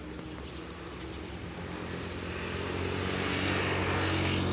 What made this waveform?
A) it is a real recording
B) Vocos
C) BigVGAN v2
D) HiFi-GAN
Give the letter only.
A